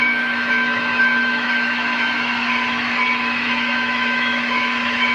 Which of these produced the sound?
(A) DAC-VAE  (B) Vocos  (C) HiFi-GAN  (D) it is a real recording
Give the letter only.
A